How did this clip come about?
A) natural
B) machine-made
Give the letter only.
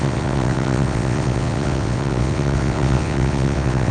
B